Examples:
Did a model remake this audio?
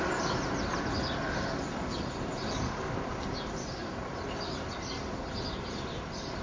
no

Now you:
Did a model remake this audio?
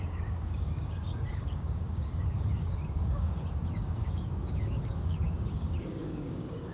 yes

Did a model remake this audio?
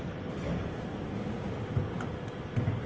no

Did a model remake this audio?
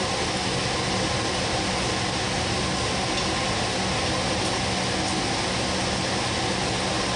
no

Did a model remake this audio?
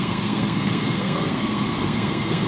yes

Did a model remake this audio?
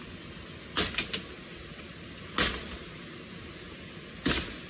no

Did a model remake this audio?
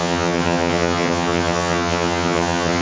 yes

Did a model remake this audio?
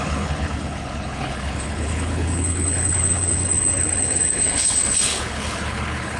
yes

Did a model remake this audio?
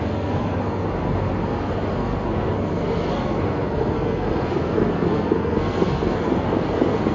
yes